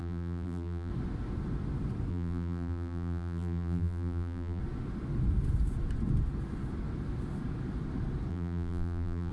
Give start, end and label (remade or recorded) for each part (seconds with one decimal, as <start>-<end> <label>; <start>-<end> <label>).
0.0-0.9 remade; 0.9-2.1 recorded; 2.1-4.6 remade; 4.6-8.3 recorded; 8.3-9.3 remade